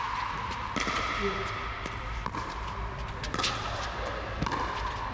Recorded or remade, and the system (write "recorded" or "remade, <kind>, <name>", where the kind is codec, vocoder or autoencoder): recorded